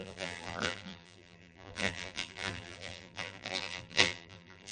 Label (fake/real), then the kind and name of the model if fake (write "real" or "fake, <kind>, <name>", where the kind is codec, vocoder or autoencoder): fake, vocoder, BigVGAN v2